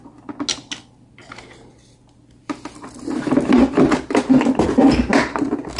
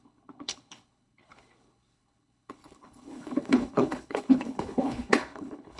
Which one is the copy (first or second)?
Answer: second